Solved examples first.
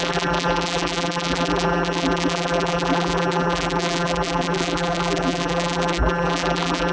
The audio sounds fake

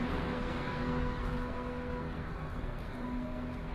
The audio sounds fake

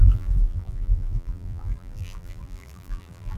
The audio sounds fake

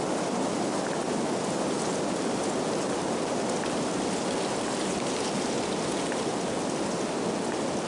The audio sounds real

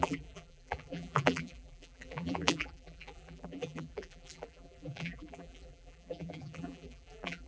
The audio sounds fake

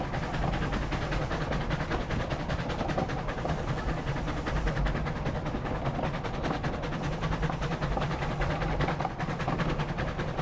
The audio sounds real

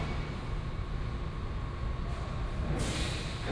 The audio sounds real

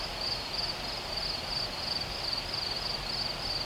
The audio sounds real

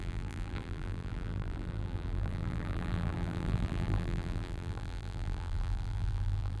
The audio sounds fake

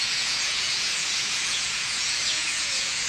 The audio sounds fake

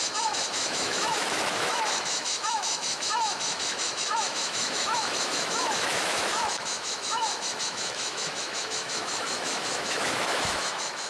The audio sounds fake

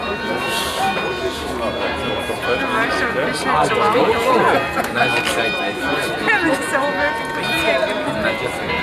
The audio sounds real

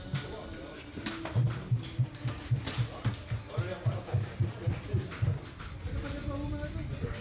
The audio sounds real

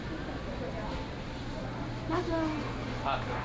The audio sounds real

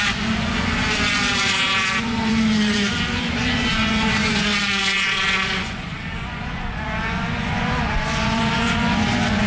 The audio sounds fake